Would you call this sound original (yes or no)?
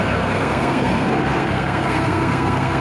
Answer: no